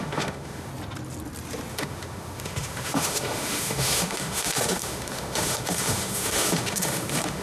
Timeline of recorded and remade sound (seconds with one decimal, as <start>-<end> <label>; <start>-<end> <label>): 0.0-0.7 remade; 0.7-1.7 recorded; 1.7-7.4 remade